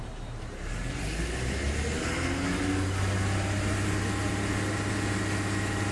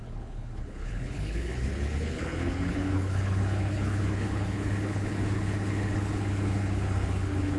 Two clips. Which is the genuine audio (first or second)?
first